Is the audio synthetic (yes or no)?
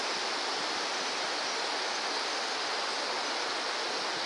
no